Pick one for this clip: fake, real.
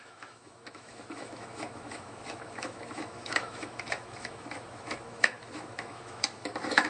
fake